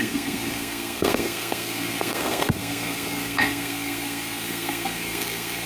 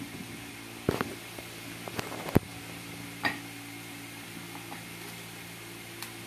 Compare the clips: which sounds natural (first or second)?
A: second